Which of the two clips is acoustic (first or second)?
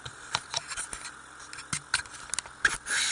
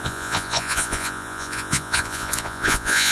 first